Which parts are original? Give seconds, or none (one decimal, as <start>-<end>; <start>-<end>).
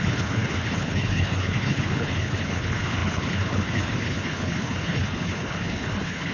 none